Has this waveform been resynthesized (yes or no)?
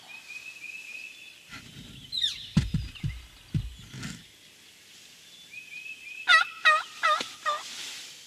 no